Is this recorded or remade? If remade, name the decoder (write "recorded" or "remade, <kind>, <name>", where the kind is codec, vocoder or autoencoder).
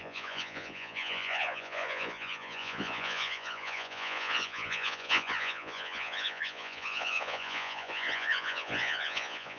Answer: remade, vocoder, Vocos